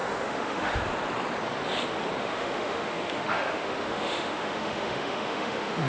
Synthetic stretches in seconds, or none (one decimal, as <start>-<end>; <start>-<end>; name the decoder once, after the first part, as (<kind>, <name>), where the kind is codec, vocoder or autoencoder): 0.0-0.8 (autoencoder, DAC-VAE); 2.2-5.9